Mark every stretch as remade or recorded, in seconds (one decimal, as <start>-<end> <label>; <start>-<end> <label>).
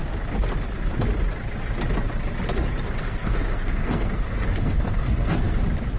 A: 0.0-3.0 recorded; 3.0-5.6 remade; 5.6-6.0 recorded